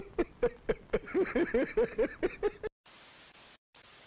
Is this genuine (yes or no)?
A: yes